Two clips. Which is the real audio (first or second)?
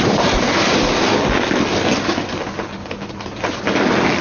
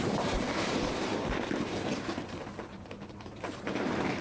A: first